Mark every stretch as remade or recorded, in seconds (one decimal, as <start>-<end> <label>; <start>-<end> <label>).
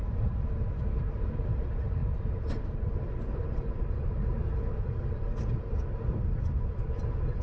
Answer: 0.0-7.4 recorded